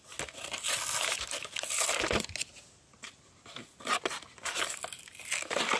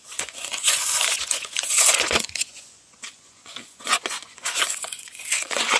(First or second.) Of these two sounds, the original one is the first